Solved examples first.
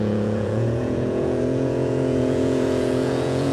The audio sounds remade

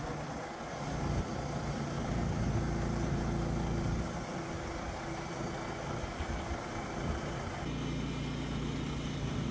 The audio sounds recorded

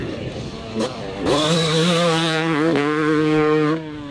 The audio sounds remade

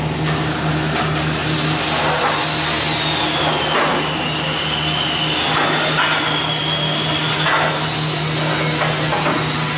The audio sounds recorded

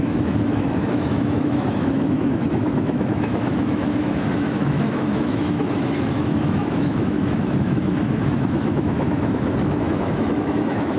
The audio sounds remade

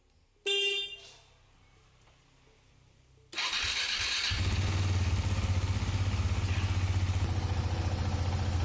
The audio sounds recorded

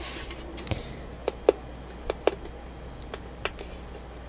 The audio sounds recorded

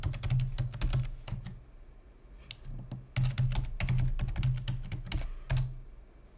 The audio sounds recorded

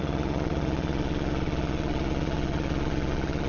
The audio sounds remade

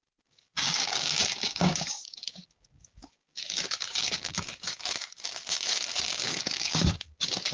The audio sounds remade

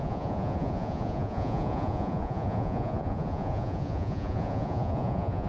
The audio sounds remade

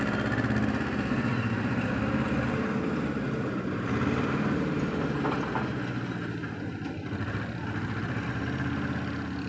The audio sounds recorded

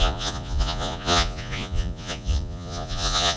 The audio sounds remade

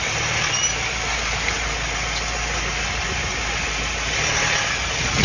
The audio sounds recorded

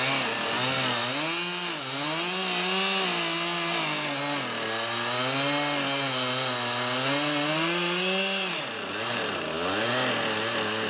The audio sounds recorded